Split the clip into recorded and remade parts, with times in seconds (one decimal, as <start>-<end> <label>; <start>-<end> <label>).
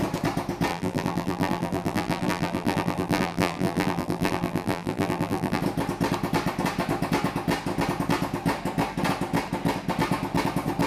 0.0-0.7 recorded; 0.7-5.6 remade; 5.6-10.9 recorded